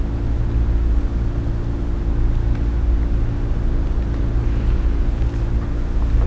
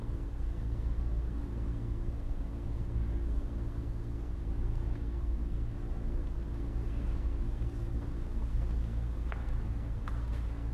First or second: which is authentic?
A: first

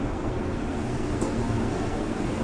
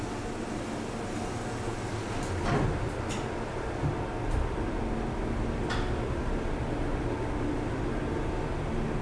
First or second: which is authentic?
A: second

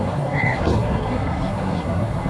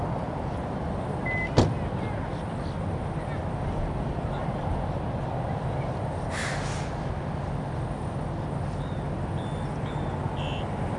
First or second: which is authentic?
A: second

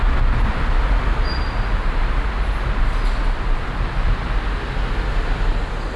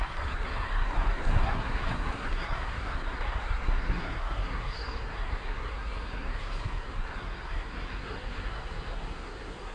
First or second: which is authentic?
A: first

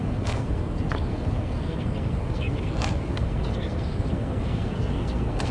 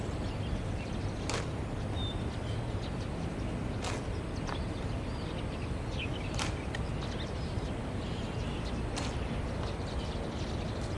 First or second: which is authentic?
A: second